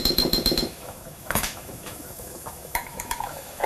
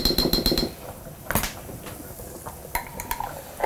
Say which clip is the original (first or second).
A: second